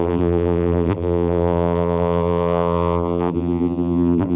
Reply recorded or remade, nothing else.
remade